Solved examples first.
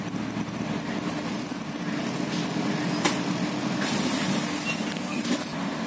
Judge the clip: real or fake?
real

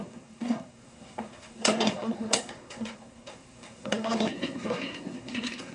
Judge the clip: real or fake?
fake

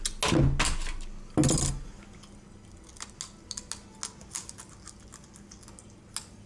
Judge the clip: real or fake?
real